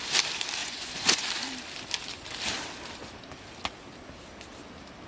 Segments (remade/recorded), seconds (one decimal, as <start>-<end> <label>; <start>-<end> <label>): 0.0-0.6 recorded; 0.6-1.3 remade; 1.3-5.1 recorded